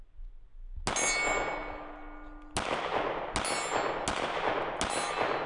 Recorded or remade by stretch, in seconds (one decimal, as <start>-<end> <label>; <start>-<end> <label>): 0.0-5.5 recorded